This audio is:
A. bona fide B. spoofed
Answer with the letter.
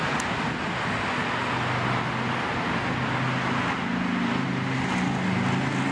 A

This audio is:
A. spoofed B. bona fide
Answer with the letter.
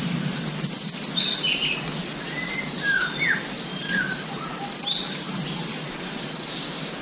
B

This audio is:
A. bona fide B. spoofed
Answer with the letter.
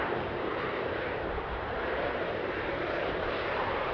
B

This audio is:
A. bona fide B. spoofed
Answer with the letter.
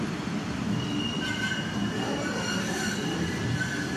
A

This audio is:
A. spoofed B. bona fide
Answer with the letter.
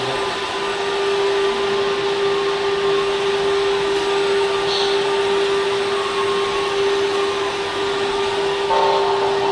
B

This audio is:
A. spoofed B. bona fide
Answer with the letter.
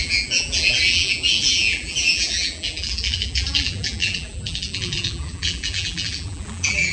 A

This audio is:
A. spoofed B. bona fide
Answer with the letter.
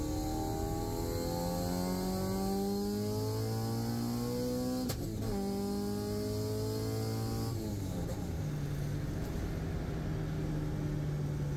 B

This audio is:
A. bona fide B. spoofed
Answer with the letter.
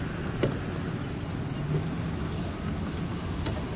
A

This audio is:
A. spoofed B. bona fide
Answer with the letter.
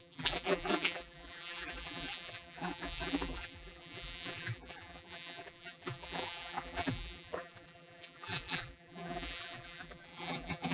A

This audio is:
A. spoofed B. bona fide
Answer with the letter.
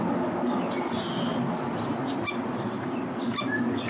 B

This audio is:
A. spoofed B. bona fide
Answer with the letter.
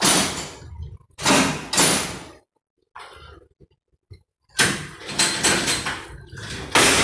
B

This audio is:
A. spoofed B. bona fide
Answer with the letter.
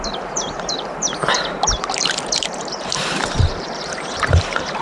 A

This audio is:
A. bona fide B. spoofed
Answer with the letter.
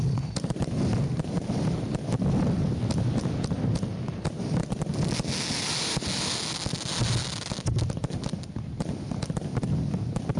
A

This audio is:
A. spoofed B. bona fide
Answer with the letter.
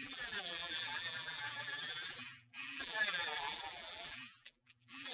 A